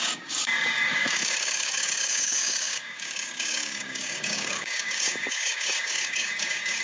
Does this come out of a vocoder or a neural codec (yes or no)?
yes